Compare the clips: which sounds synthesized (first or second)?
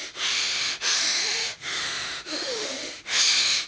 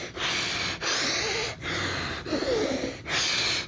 first